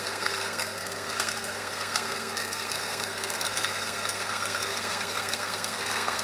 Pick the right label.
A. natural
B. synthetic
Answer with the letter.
B